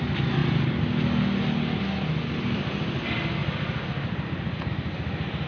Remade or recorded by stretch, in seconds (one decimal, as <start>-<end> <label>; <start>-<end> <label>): 0.0-5.5 recorded